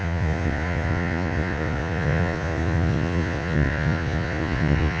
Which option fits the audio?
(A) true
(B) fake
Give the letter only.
B